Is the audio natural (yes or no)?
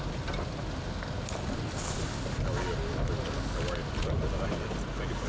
yes